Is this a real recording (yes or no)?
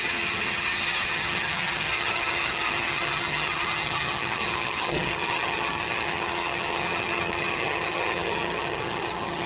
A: no